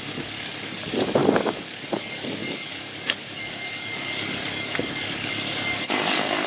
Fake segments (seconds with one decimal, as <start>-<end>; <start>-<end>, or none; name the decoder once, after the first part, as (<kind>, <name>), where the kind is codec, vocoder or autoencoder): 0.0-6.5 (codec, DAC)